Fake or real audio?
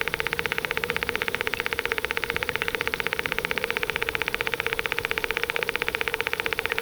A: fake